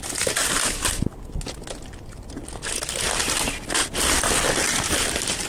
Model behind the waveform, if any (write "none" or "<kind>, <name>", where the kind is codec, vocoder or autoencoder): none